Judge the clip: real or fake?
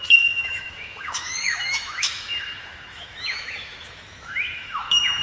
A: fake